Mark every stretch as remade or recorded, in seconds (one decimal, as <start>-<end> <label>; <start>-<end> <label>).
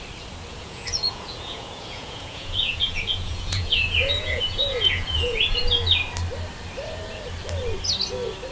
0.0-0.5 recorded; 0.5-5.6 remade; 5.6-8.5 recorded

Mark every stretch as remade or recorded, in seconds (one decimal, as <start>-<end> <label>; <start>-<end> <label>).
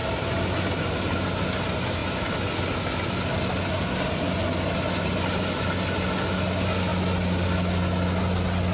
0.0-8.7 recorded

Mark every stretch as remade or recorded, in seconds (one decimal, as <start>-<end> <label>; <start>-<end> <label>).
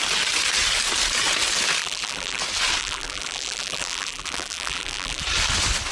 0.0-1.8 recorded; 1.8-2.4 remade; 2.4-2.8 recorded; 2.8-5.2 remade; 5.2-5.9 recorded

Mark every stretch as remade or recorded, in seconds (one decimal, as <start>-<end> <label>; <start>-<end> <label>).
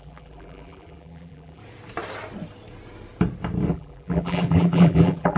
0.0-1.6 remade; 1.6-3.7 recorded; 3.7-5.4 remade